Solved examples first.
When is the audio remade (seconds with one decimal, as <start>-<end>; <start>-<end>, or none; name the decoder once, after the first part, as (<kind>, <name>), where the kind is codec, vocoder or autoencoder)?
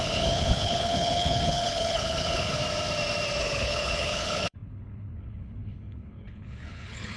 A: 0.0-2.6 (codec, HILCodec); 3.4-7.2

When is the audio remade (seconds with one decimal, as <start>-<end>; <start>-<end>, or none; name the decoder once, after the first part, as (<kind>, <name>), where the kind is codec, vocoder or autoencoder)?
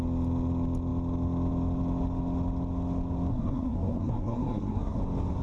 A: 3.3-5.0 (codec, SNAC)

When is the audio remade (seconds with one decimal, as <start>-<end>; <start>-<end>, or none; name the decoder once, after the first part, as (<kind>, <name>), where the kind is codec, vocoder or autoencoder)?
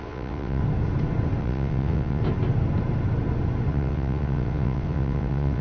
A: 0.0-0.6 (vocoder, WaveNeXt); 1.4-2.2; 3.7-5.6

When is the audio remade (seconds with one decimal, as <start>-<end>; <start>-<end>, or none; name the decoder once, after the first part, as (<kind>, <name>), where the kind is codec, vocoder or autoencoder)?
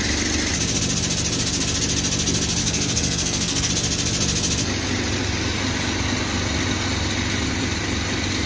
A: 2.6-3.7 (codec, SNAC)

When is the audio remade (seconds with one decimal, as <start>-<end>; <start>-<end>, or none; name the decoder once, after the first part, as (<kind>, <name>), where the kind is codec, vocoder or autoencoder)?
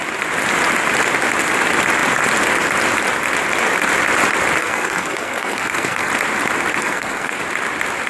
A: 4.6-6.1 (codec, SNAC); 6.8-7.4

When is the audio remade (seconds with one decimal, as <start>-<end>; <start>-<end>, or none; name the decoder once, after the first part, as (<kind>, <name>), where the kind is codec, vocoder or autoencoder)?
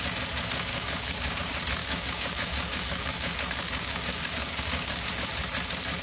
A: 0.7-1.4 (codec, DAC); 1.8-5.1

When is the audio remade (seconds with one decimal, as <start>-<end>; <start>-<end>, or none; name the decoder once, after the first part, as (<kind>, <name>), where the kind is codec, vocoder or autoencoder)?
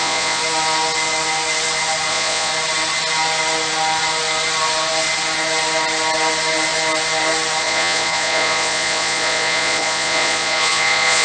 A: 0.0-0.4 (vocoder, Vocos); 2.1-2.5; 7.6-11.2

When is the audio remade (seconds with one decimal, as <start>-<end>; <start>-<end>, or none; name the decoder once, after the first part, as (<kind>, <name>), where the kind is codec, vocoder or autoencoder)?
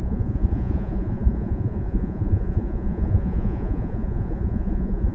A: 0.0-5.1 (vocoder, Vocos)